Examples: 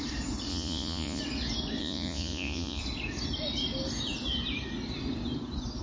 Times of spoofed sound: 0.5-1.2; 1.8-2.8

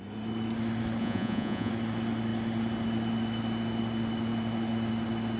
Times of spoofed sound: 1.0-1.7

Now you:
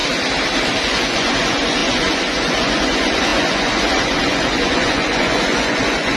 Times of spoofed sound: 0.8-6.2

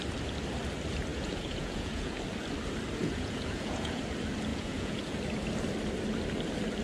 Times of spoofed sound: 1.1-2.2; 3.0-4.0; 4.5-5.2

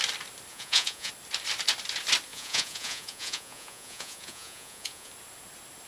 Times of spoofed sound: 0.5-1.1; 2.3-5.1

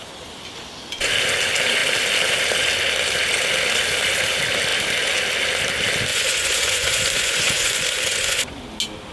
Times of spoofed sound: 6.1-8.6

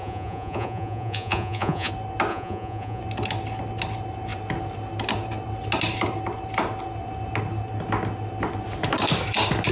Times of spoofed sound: 0.0-1.9; 2.3-3.0

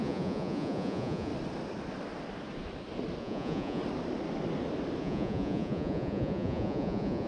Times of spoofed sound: 0.0-1.3; 3.2-3.8; 5.0-7.3